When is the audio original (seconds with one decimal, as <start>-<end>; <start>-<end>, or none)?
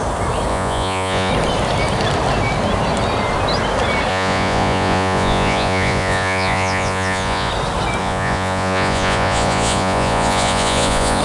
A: 0.0-0.5; 1.3-4.1; 7.5-8.0